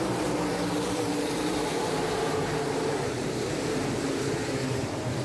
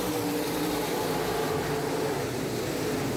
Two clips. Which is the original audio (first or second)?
second